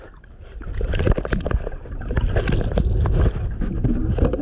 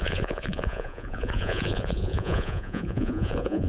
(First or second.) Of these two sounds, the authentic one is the first